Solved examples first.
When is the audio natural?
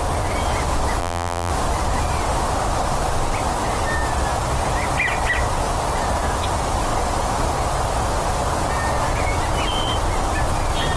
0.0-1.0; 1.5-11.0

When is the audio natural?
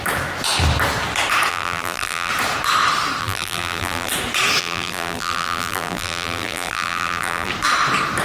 0.0-1.5; 2.3-3.2; 4.1-4.6; 7.5-8.2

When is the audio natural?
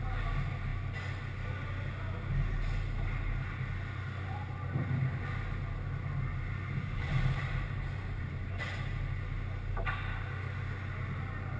0.0-6.3; 8.6-11.6